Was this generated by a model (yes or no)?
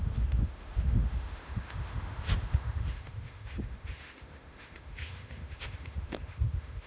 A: yes